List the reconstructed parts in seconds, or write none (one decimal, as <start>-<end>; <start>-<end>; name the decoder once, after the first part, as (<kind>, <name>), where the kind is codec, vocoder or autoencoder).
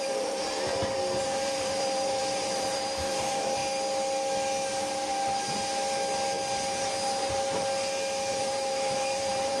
0.0-0.7 (vocoder, BigVGAN v2); 1.2-3.6; 8.3-9.6